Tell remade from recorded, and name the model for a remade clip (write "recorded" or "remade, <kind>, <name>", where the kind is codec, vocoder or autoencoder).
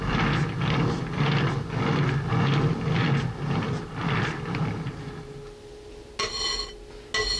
recorded